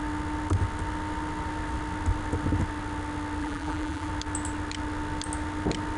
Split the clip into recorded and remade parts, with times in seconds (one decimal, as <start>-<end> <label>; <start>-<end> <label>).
0.0-3.4 recorded; 3.4-4.1 remade; 4.1-6.0 recorded